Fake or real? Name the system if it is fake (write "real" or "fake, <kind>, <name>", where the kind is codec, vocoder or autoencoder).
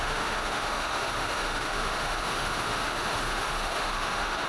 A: fake, autoencoder, DAC-VAE